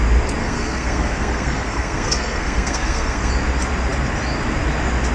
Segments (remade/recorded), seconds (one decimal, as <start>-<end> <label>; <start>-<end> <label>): 0.0-0.4 recorded; 0.4-3.3 remade; 3.3-5.1 recorded